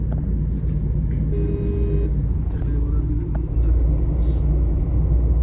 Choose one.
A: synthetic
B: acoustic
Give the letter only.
B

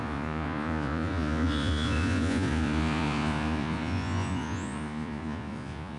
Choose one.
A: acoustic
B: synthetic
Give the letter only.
B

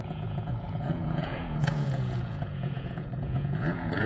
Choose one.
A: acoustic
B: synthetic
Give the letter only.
B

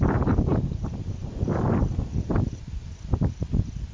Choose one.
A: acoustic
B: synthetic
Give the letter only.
A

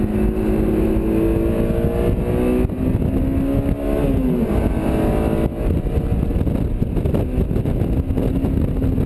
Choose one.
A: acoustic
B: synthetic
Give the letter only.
A